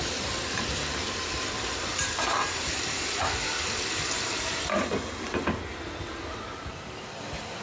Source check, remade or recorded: remade